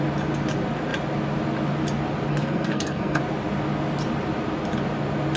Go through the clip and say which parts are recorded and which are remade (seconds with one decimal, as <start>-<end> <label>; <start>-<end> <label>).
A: 0.0-2.3 recorded; 2.3-3.2 remade; 3.2-5.4 recorded